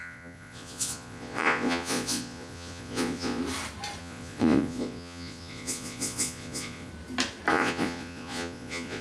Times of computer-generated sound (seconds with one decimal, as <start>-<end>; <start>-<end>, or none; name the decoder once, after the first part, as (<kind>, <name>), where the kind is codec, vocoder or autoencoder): 0.0-3.4 (vocoder, Vocos); 4.0-6.9; 7.5-9.0

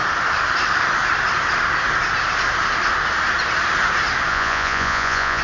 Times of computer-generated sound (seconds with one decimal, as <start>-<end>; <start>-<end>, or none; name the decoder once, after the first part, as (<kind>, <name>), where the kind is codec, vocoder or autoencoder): 4.3-5.4 (vocoder, Vocos)